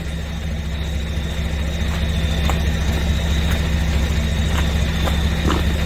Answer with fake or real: real